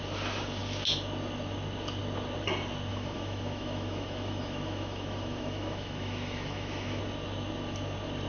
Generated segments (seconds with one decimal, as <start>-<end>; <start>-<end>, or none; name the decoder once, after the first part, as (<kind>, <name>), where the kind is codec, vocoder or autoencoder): 2.9-7.0 (autoencoder, DAC-VAE)